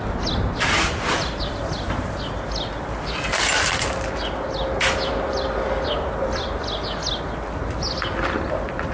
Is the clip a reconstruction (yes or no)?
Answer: no